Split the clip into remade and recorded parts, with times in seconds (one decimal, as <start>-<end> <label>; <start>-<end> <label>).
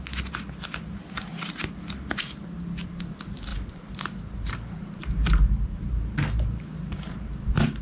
0.0-3.5 recorded; 3.5-7.8 remade